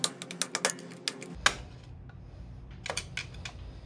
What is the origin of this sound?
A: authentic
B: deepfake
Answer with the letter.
A